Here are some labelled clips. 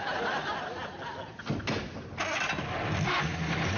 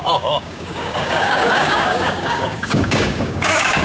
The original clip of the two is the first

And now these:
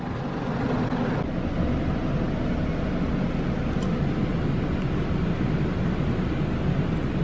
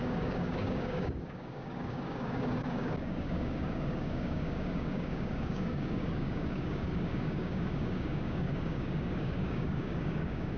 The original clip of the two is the first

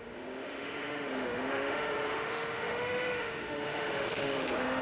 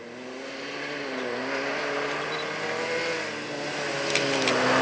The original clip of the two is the second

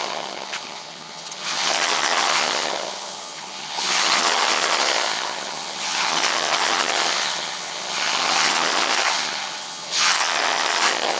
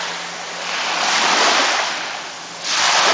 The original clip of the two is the second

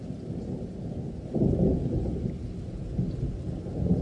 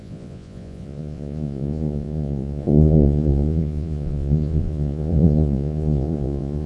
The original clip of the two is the first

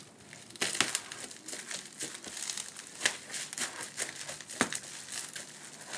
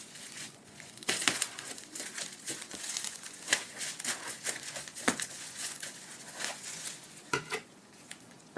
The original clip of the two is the first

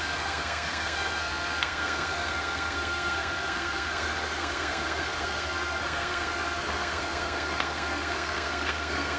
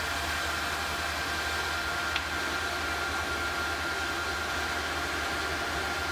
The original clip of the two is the second